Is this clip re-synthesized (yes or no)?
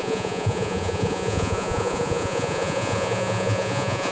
yes